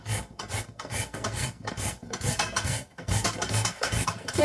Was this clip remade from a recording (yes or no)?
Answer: yes